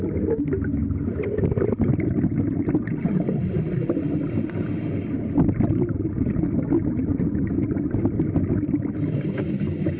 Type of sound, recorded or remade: recorded